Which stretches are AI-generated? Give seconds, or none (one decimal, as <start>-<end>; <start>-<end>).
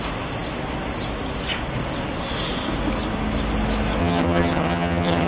4.0-5.3